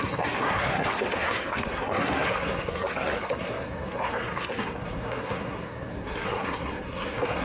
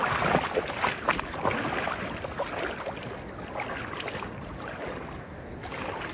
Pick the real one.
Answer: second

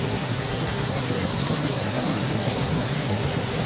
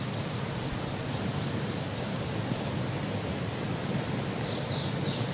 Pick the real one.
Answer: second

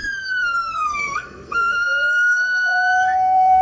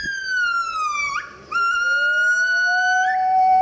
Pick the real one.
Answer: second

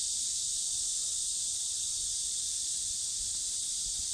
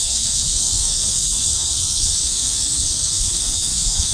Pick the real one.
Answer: first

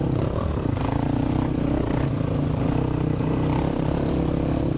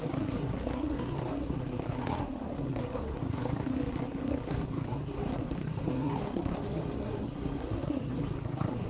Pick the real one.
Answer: first